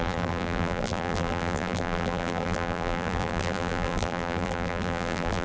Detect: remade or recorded remade